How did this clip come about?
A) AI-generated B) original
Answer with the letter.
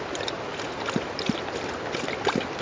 B